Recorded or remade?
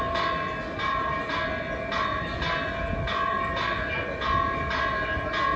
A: recorded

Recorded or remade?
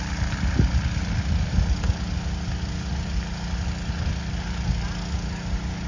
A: recorded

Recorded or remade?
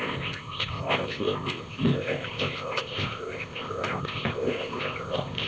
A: remade